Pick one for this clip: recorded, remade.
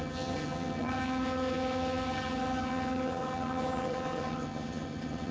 remade